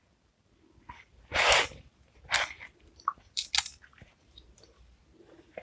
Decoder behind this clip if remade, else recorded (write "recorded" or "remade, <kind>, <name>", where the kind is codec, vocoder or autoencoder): recorded